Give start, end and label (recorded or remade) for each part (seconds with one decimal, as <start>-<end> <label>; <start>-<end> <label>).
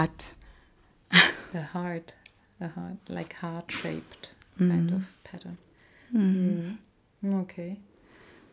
0.0-0.5 recorded; 0.5-1.3 remade; 1.3-8.5 recorded